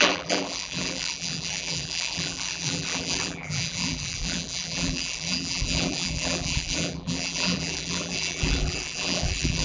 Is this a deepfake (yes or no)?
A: yes